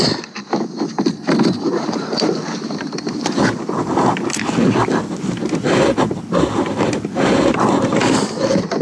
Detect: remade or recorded recorded